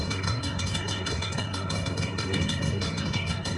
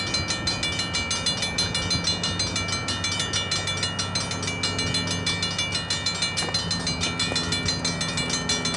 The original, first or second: second